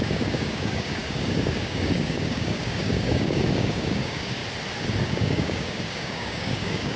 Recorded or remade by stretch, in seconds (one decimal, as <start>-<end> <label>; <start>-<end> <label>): 0.0-4.4 remade; 4.4-5.0 recorded; 5.0-7.0 remade